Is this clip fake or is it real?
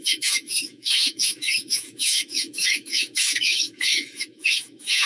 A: fake